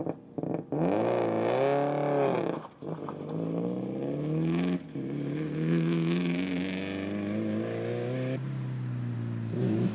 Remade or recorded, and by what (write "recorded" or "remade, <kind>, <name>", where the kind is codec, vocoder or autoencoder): recorded